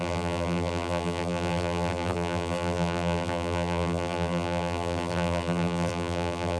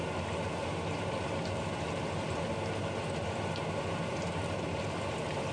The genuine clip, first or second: second